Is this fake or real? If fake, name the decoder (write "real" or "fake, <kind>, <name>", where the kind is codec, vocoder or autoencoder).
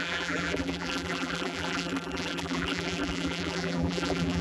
fake, vocoder, BigVGAN v2